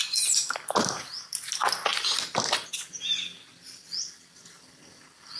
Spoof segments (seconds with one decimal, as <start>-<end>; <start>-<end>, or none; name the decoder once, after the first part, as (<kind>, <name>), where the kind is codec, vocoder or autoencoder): 1.9-3.7 (vocoder, BigVGAN v2)